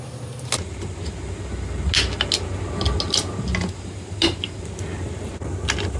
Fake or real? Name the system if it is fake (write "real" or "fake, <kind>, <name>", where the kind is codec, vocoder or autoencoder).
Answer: real